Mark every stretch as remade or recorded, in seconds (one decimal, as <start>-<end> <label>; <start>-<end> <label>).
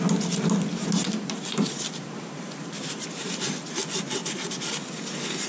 0.0-1.0 recorded; 1.0-3.8 remade; 3.8-5.5 recorded